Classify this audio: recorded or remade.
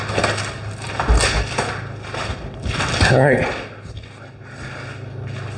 recorded